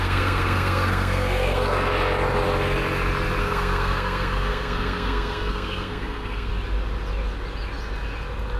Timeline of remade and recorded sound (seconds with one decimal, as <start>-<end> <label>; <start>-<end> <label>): 0.0-1.9 remade; 1.9-3.4 recorded; 3.4-6.5 remade; 6.5-8.6 recorded